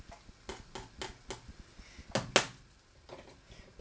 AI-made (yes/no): no